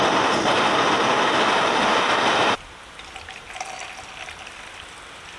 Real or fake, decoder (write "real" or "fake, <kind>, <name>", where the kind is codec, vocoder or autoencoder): real